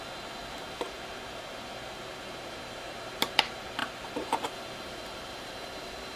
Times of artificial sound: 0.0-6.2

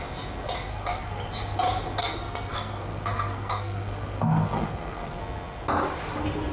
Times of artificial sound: 0.7-1.3; 2.0-5.2

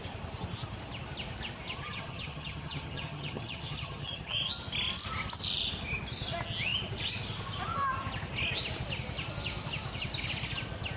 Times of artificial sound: 1.8-4.5

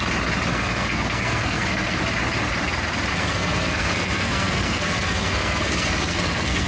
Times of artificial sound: 0.5-2.0; 3.1-6.7

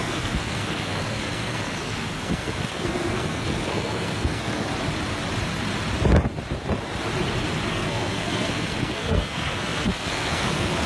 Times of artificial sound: 0.0-4.7; 7.7-10.9

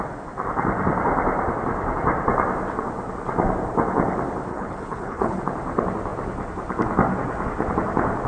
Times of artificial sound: 4.5-5.4